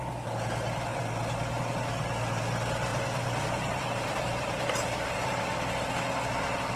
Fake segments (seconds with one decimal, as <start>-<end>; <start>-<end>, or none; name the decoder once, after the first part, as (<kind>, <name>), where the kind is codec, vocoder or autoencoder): 2.9-5.3 (vocoder, BigVGAN v2)